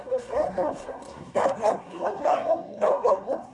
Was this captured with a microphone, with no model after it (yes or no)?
no